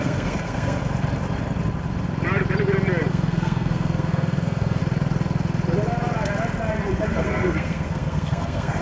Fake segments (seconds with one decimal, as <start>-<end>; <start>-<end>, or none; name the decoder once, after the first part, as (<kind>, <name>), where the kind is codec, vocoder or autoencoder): 0.0-0.8 (codec, SNAC); 3.1-4.8; 7.1-8.8